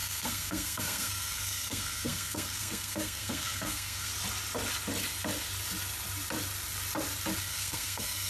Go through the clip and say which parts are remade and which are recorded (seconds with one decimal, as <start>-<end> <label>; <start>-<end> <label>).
0.0-4.1 remade; 4.1-7.4 recorded; 7.4-8.3 remade